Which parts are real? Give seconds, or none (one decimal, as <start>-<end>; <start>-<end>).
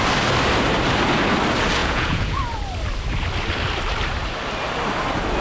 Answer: 0.0-1.8; 2.4-5.4